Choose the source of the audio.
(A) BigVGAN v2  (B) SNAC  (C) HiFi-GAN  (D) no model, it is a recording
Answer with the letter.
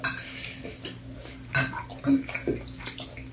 D